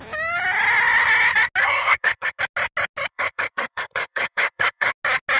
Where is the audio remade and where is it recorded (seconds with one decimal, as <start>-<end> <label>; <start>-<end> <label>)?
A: 0.0-1.6 recorded; 1.6-2.4 remade; 2.4-3.1 recorded; 3.1-4.9 remade; 4.9-5.4 recorded